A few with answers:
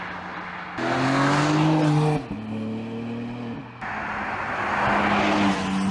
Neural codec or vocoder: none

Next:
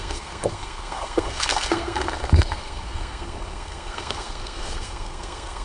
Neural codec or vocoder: codec, SNAC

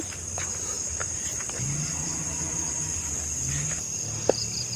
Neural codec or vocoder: none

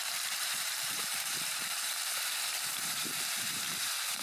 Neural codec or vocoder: vocoder, BigVGAN v2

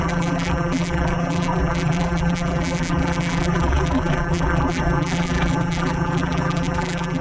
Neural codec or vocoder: vocoder, BigVGAN v2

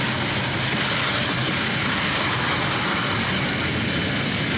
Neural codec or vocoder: none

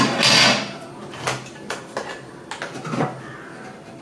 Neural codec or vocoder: none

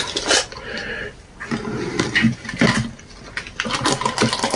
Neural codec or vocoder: none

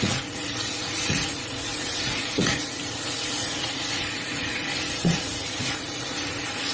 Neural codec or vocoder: vocoder, Vocos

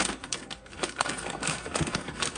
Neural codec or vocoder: codec, SNAC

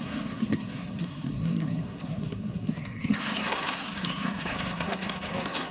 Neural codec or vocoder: codec, SNAC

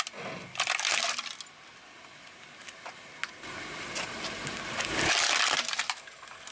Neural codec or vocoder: none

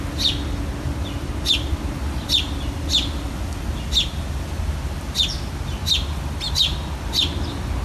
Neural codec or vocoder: none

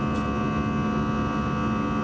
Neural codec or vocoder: none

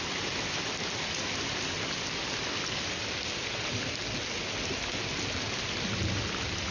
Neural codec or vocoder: none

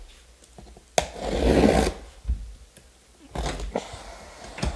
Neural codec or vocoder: none